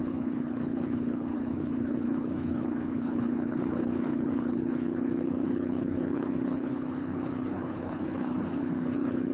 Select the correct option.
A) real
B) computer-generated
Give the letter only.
B